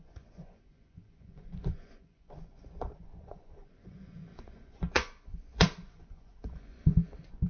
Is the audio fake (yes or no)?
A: yes